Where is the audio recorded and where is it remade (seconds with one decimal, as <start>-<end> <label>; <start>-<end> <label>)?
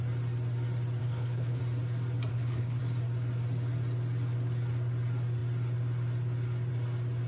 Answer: 0.0-1.0 recorded; 1.0-1.6 remade; 1.6-2.3 recorded; 2.3-2.8 remade; 2.8-7.3 recorded